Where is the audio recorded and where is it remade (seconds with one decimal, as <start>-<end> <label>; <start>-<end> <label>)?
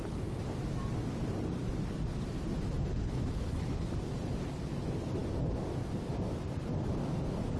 0.0-2.9 recorded; 2.9-3.9 remade; 3.9-7.6 recorded